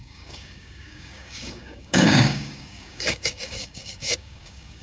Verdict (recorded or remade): remade